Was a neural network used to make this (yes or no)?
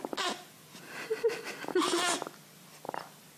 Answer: no